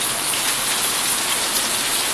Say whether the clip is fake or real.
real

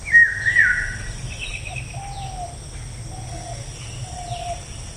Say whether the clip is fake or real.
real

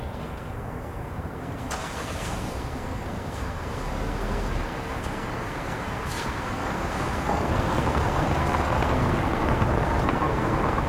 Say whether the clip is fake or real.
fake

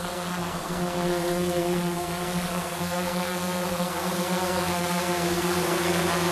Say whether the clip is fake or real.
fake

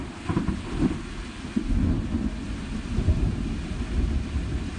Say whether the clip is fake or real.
real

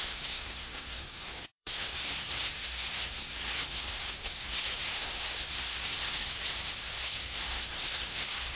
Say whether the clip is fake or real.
fake